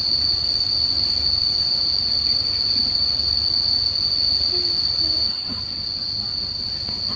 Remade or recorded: recorded